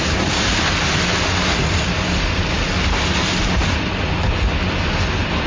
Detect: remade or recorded recorded